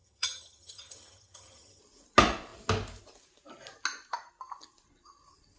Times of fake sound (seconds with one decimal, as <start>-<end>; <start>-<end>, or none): 0.0-1.8